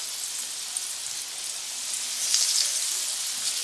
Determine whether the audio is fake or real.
real